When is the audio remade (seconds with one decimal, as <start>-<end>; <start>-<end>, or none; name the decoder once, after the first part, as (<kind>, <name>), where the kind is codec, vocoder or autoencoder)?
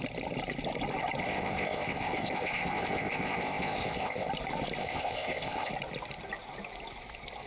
1.2-4.3 (codec, ZipCodec); 4.8-5.7